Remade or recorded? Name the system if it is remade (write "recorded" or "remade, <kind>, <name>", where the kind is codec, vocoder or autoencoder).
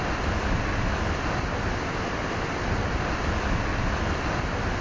recorded